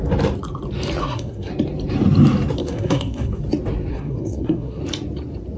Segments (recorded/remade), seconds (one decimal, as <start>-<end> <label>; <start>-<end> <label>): 0.0-1.0 recorded; 1.0-1.5 remade; 1.5-2.6 recorded; 2.6-3.4 remade; 3.4-3.9 recorded; 3.9-4.8 remade; 4.8-5.6 recorded